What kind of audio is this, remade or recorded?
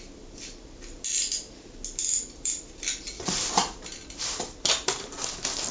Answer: recorded